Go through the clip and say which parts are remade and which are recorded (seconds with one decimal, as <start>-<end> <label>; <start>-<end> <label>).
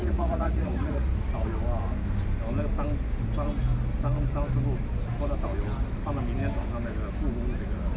0.0-1.1 remade; 1.1-8.0 recorded